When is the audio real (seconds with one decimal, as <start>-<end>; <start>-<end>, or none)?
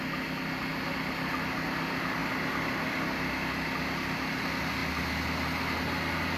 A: 0.0-6.4